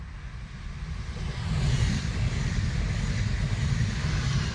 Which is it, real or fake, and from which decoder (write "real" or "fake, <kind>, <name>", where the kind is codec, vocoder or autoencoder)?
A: real